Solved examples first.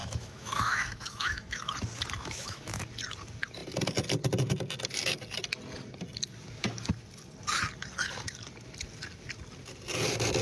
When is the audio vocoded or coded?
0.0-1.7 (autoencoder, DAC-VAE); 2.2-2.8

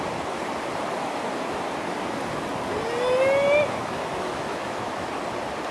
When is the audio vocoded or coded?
3.8-5.1 (autoencoder, DAC-VAE)